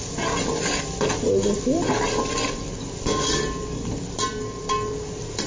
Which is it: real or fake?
real